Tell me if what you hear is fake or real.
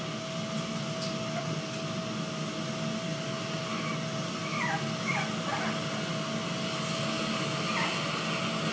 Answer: real